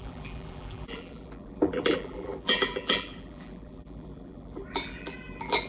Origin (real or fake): fake